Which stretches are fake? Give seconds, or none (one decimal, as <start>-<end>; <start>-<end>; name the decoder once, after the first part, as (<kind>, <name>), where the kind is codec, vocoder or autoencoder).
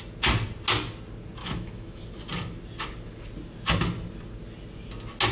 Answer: 1.4-2.0 (autoencoder, DAC-VAE)